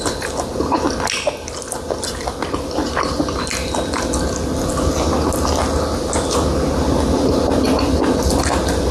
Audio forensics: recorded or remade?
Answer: recorded